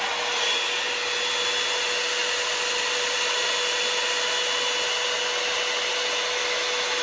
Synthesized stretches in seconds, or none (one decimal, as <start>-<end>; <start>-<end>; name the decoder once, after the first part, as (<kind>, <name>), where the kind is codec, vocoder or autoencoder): none